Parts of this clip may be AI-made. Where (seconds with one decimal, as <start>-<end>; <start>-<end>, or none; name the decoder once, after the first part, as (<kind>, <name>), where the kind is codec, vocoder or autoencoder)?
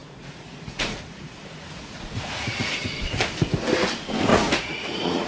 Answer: 0.0-3.2 (vocoder, Vocos); 4.3-5.3